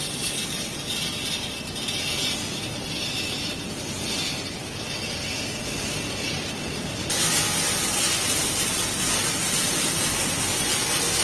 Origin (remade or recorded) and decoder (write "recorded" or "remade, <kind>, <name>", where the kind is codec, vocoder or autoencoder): recorded